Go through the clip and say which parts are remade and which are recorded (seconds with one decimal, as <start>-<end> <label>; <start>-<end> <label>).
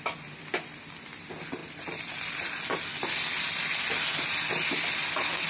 0.0-5.5 recorded